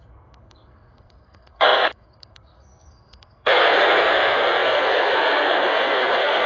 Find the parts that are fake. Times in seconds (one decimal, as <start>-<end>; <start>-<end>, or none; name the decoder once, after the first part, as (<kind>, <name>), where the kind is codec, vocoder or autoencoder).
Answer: 0.0-6.5 (codec, SNAC)